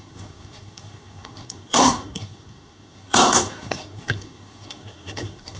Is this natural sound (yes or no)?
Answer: no